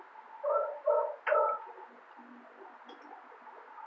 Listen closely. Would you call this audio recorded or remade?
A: recorded